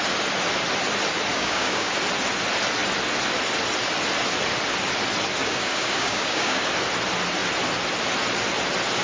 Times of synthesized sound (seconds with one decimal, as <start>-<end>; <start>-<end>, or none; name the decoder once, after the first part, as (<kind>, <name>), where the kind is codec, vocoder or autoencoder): 1.3-1.9 (codec, DAC); 5.4-6.7